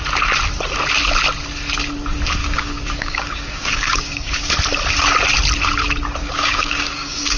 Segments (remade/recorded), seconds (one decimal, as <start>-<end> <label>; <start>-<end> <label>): 0.0-2.4 recorded; 2.4-4.5 remade; 4.5-6.2 recorded; 6.2-7.4 remade